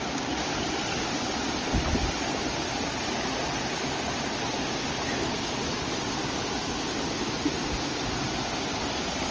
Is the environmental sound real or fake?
real